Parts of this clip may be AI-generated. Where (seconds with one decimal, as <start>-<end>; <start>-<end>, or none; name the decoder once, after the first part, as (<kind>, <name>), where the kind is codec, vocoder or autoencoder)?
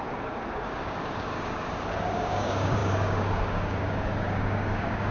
0.0-5.1 (codec, DAC)